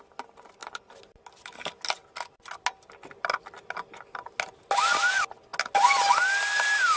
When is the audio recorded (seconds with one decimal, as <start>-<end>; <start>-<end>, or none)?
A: 0.0-7.0

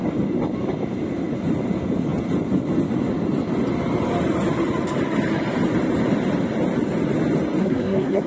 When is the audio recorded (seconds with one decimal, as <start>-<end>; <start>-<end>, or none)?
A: 0.0-7.6

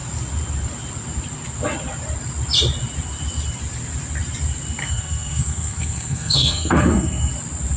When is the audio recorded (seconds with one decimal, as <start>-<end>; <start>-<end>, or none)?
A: 0.0-4.8; 7.3-7.8